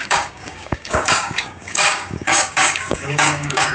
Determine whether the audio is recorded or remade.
remade